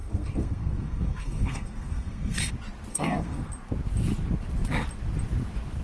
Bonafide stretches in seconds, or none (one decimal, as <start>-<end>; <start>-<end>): 2.5-2.9; 3.5-5.8